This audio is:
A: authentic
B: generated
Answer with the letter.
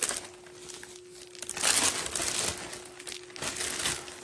A